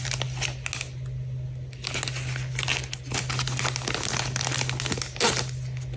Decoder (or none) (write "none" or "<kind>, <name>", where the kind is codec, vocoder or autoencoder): none